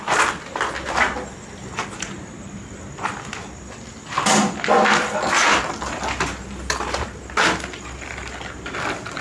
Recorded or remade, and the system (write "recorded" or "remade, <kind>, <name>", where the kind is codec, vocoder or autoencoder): recorded